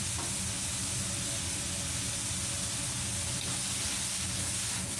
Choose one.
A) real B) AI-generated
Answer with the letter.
A